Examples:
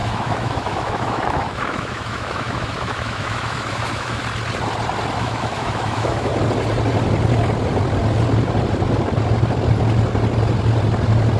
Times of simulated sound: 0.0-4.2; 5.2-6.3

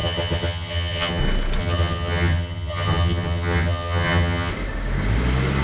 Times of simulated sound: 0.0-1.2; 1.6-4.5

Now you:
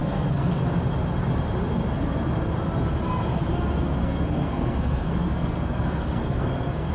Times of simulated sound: 0.0-0.6; 4.0-6.9

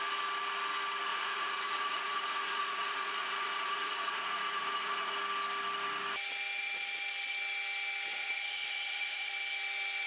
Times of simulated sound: 1.1-5.1; 8.1-9.3

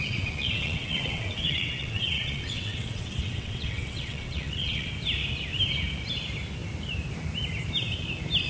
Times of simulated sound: 0.0-4.9

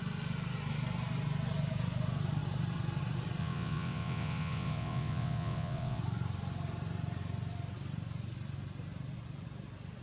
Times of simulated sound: 3.4-6.0